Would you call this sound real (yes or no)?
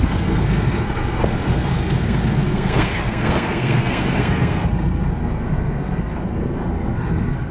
no